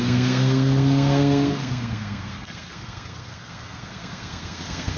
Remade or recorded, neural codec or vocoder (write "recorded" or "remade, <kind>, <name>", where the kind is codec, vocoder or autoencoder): remade, codec, SNAC